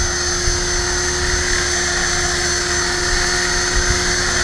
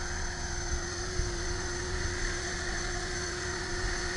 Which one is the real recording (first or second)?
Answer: first